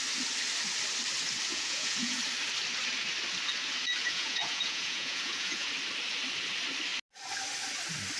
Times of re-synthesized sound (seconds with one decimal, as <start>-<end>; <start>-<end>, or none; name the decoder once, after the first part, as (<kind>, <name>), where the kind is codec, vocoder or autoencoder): 1.5-2.2 (vocoder, Vocos); 4.0-5.7